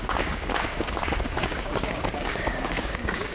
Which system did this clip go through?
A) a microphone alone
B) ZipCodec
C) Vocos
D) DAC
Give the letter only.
D